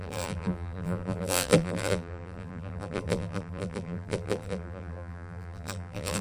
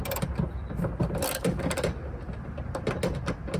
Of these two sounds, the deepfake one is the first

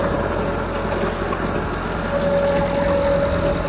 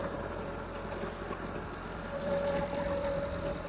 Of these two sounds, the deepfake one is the second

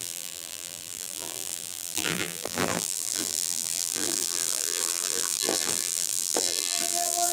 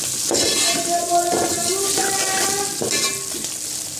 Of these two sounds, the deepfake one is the first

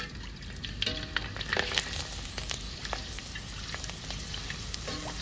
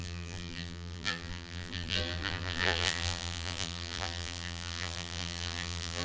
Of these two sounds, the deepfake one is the second